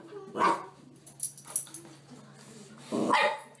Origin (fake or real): real